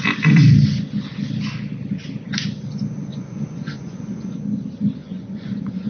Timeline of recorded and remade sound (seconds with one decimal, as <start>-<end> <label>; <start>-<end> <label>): 0.0-3.1 recorded; 3.1-4.4 remade; 4.4-5.0 recorded; 5.0-5.9 remade